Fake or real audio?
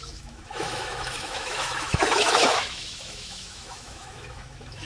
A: fake